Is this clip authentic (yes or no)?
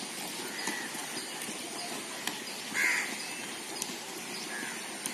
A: yes